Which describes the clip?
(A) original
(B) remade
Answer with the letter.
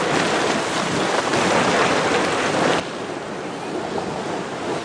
A